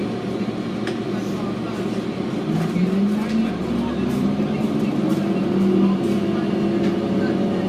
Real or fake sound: real